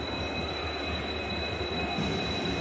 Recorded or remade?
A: recorded